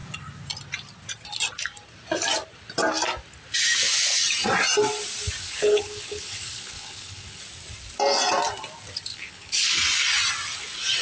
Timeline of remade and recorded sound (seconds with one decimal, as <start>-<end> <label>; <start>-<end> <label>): 0.0-5.4 recorded; 5.4-7.4 remade; 7.4-9.1 recorded; 9.1-9.7 remade; 9.7-11.0 recorded